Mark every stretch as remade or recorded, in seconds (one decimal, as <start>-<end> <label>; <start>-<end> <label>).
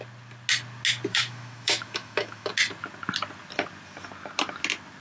0.0-1.1 recorded; 1.1-2.5 remade; 2.5-5.0 recorded